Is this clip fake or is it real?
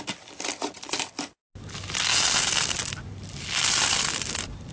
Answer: real